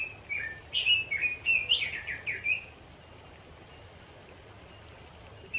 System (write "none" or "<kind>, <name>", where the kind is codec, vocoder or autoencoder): none